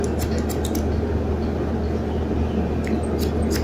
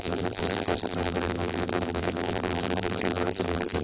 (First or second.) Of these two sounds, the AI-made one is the second